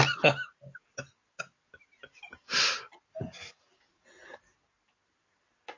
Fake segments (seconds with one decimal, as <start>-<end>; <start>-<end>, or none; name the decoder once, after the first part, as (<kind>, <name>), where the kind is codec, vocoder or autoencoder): none